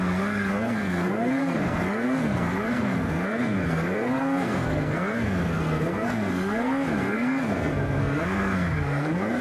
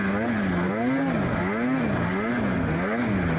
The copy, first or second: first